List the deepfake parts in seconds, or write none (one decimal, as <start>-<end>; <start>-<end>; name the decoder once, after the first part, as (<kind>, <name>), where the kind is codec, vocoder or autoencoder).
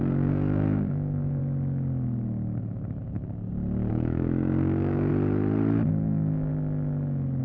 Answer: 0.0-1.4 (codec, DAC); 3.9-5.1; 5.9-6.5